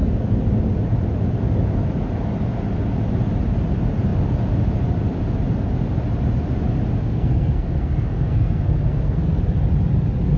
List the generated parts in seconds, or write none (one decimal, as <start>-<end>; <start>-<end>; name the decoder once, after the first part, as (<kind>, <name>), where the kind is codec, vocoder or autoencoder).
7.0-9.4 (codec, SNAC)